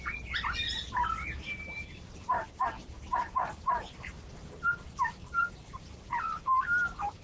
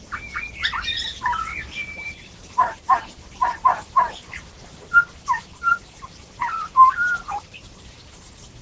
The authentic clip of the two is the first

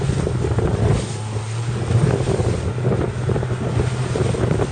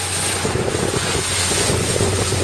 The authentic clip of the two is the first